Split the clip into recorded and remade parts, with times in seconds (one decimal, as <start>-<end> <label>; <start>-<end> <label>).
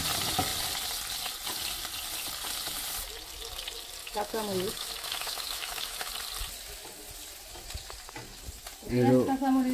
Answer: 0.0-4.0 recorded; 4.0-6.1 remade; 6.1-9.7 recorded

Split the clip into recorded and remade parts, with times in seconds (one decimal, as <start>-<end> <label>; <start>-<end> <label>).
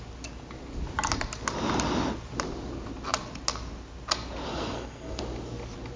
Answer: 0.0-4.5 recorded; 4.5-5.2 remade; 5.2-6.0 recorded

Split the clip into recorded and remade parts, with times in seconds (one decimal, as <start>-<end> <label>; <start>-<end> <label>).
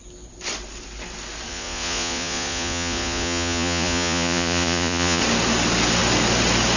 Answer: 0.0-1.5 recorded; 1.5-5.2 remade; 5.2-6.8 recorded